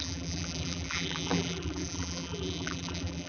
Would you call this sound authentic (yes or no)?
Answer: no